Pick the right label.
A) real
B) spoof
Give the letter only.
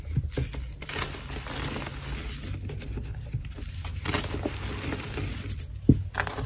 A